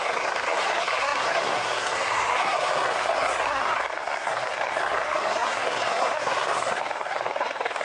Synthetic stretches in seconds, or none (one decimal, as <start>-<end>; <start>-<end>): 0.0-7.8